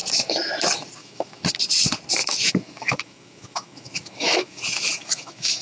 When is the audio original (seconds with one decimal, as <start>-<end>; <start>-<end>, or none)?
0.5-1.0; 1.6-2.2

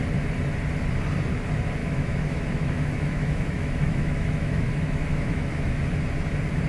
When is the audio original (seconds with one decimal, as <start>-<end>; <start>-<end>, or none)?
0.0-1.8; 5.8-6.7

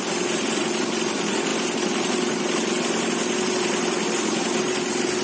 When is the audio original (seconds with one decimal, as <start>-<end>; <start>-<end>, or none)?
0.0-5.2